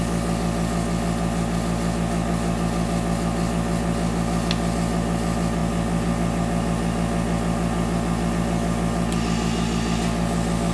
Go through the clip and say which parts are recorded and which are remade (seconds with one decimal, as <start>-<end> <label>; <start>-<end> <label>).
0.0-10.7 recorded